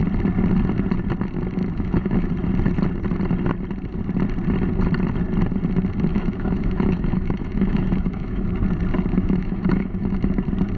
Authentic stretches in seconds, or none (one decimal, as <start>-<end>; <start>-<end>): 0.0-1.6; 2.3-6.1; 8.5-9.1; 10.3-10.8